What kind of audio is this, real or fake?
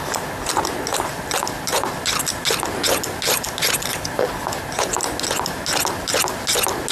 real